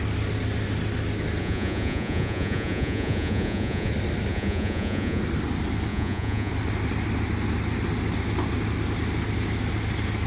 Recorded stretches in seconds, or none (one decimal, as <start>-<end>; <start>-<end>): 0.0-1.4; 3.9-4.3; 5.2-5.9; 6.5-10.3